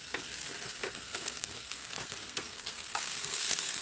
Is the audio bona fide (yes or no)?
no